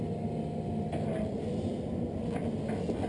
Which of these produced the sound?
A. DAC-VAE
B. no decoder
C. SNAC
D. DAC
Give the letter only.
B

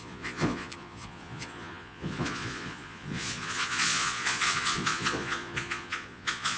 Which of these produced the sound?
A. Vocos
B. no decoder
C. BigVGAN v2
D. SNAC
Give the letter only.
A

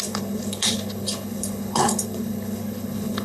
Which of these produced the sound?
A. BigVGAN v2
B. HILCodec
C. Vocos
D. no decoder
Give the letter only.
B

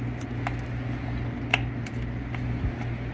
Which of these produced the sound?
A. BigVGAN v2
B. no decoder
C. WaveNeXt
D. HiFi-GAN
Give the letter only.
B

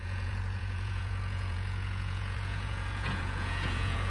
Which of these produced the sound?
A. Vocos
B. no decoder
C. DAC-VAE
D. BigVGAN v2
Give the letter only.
A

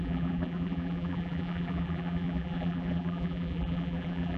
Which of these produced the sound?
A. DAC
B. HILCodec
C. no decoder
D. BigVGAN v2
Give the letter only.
D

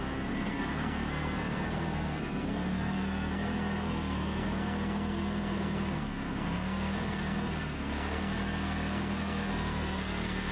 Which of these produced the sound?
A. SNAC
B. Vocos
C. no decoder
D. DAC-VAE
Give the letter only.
A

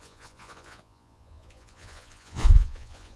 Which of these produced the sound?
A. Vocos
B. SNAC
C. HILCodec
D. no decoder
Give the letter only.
A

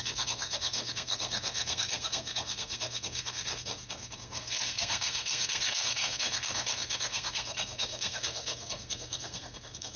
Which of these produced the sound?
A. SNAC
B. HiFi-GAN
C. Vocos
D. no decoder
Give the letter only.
A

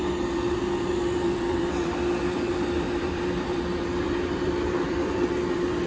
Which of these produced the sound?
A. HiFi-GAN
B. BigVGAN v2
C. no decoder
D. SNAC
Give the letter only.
B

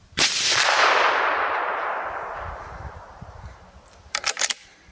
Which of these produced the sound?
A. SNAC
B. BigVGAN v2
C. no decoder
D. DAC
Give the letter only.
B